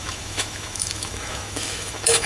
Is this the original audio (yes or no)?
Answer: no